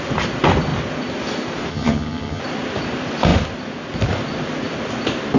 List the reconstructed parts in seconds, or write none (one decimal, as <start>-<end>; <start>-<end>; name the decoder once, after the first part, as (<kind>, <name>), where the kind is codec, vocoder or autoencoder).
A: 1.7-2.4 (vocoder, HiFi-GAN)